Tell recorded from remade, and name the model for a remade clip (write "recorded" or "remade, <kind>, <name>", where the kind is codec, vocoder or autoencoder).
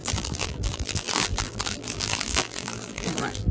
remade, vocoder, BigVGAN v2